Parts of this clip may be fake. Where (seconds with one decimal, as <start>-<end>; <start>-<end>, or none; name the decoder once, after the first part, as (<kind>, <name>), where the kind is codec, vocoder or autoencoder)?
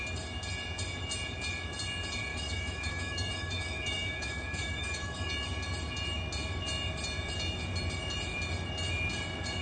2.3-5.3 (autoencoder, DAC-VAE)